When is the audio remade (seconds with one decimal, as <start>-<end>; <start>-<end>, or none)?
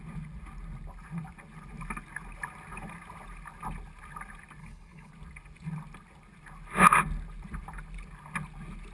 4.6-5.1